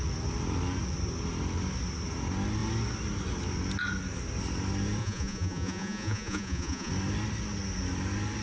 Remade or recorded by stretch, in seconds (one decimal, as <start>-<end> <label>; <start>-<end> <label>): 0.0-5.0 recorded; 5.0-6.9 remade; 6.9-8.4 recorded